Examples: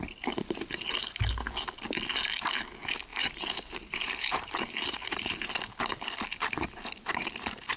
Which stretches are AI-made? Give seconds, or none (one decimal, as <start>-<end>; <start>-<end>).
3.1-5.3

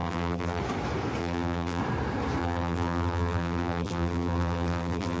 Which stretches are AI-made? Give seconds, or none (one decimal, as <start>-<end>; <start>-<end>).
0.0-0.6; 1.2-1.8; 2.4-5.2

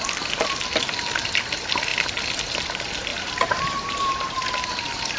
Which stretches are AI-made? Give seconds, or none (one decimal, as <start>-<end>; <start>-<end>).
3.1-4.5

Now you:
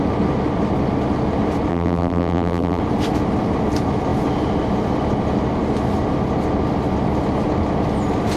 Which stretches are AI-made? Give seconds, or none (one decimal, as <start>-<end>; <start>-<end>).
1.7-2.8

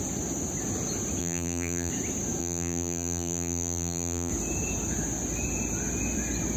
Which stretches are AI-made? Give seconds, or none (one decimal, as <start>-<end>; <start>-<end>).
1.2-1.9; 2.4-4.3